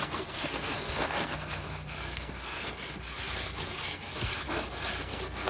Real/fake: fake